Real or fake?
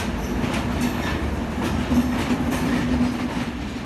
real